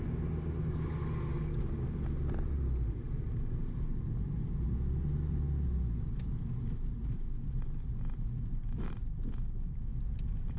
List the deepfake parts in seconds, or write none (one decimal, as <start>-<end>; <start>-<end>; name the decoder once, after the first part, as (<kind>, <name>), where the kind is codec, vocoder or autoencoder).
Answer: none